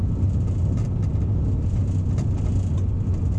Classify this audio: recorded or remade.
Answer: recorded